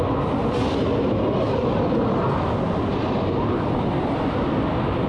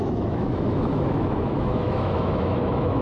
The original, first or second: first